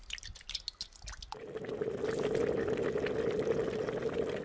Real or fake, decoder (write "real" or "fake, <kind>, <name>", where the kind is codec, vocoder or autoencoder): real